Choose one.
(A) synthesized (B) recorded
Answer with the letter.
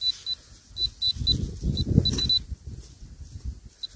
B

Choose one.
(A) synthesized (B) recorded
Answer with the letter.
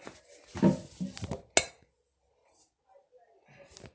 B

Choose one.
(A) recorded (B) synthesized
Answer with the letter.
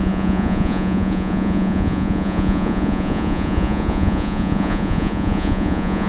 B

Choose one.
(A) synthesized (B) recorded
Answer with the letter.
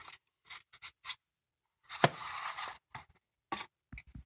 B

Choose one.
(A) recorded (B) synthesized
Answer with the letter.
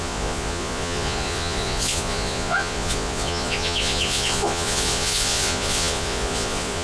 B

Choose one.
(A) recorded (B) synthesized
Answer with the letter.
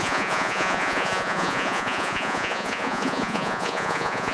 B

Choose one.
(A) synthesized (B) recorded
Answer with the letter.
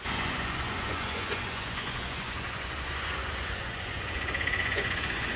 A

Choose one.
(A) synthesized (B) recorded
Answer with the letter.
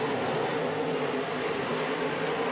B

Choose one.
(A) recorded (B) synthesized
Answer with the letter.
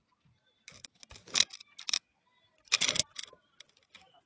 A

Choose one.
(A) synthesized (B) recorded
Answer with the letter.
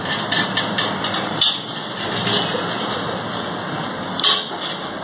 B